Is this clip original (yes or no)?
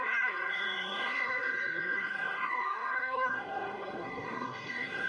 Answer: no